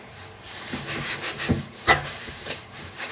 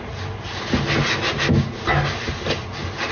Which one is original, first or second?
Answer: second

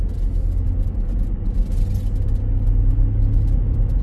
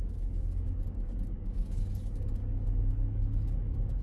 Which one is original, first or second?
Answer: first